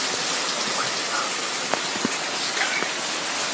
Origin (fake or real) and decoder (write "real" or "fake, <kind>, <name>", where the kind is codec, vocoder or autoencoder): real